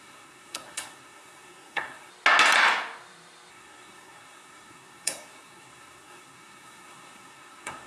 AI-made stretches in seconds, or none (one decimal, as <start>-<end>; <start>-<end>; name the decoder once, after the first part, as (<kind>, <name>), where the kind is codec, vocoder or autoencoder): 0.0-2.1 (codec, SNAC); 3.5-7.9